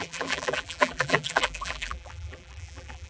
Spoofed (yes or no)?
yes